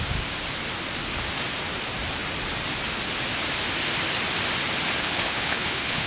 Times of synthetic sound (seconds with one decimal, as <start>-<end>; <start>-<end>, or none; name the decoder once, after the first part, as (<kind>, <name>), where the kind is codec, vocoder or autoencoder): 5.0-6.1 (codec, HILCodec)